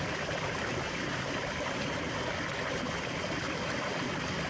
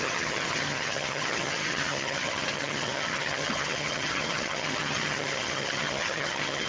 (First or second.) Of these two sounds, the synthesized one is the second